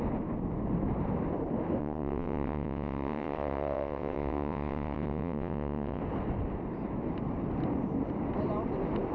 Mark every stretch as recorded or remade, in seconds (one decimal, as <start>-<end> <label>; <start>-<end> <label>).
0.0-1.8 recorded; 1.8-6.0 remade; 6.0-9.1 recorded